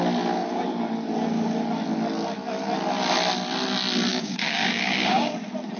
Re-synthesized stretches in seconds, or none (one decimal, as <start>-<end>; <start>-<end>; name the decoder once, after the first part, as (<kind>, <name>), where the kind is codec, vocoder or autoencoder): 4.1-5.3 (codec, DAC)